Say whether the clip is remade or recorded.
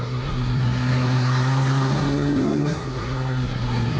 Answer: remade